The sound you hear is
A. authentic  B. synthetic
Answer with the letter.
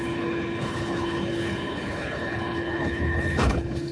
B